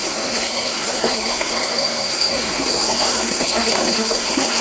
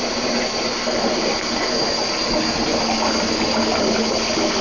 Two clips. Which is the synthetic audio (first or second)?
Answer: first